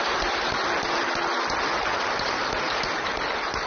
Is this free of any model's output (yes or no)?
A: yes